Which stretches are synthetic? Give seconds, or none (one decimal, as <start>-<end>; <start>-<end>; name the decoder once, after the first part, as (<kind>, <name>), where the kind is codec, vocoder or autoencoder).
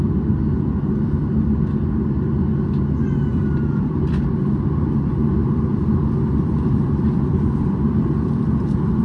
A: 3.3-4.0 (vocoder, BigVGAN v2); 5.4-9.0